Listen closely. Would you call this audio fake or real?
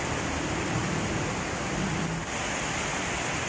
real